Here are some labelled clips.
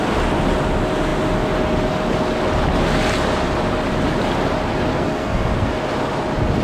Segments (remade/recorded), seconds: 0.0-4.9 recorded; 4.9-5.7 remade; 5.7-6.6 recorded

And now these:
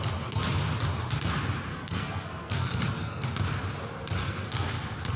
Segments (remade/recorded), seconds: 0.0-1.7 recorded; 1.7-3.3 remade; 3.3-4.2 recorded; 4.2-4.7 remade; 4.7-5.2 recorded

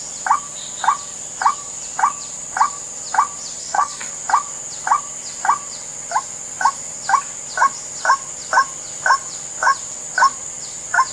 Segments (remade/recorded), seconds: 0.0-3.6 recorded; 3.6-4.1 remade; 4.1-11.1 recorded

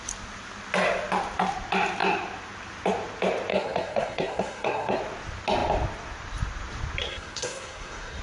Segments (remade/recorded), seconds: 0.0-3.5 recorded; 3.5-5.0 remade; 5.0-7.0 recorded; 7.0-8.2 remade

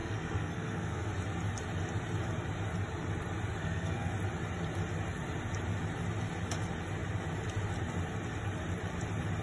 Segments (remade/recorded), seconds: 0.0-1.1 remade; 1.1-3.6 recorded; 3.6-4.1 remade; 4.1-9.4 recorded